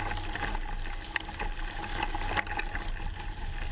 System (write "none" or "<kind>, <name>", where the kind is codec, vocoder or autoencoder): none